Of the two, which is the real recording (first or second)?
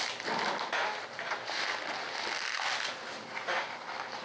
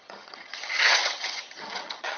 first